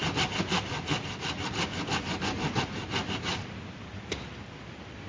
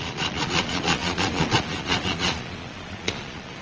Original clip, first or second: first